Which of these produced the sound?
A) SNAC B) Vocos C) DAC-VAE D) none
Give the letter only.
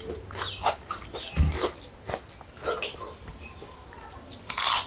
D